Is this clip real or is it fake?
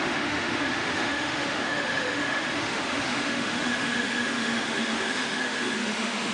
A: fake